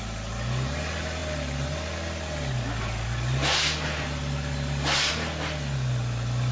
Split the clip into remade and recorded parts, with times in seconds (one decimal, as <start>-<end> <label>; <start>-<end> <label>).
0.0-6.5 recorded